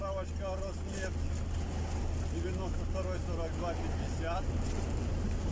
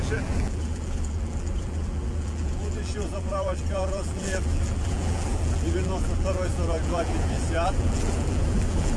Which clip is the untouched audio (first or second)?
first